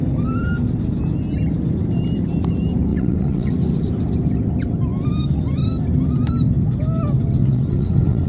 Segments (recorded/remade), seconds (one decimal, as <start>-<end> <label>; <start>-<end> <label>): 0.0-2.9 recorded; 2.9-3.5 remade; 3.5-7.4 recorded; 7.4-8.3 remade

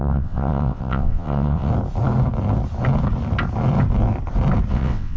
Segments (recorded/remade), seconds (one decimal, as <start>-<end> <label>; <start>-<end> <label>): 0.0-1.7 remade; 1.7-4.7 recorded; 4.7-5.2 remade